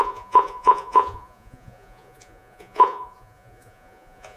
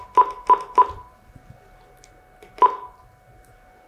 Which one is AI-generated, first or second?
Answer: first